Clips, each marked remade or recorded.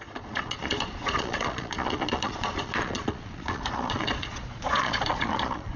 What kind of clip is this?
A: remade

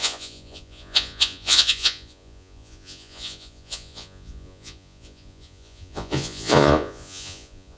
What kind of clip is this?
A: remade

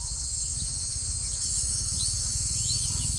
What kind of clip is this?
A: remade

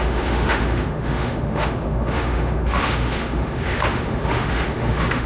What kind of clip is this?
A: remade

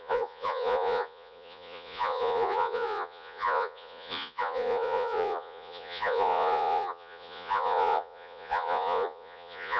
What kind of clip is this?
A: remade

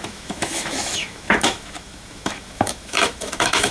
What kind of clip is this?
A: remade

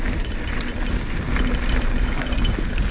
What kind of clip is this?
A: recorded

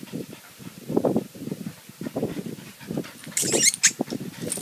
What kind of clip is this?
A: recorded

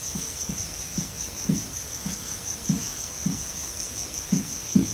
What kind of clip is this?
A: remade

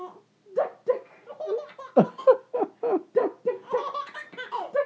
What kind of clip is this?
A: recorded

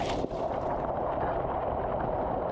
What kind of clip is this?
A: recorded